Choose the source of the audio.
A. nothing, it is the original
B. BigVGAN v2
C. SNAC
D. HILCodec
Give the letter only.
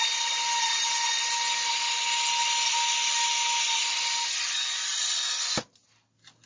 A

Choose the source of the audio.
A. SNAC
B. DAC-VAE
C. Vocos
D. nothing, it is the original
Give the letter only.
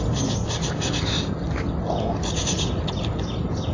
D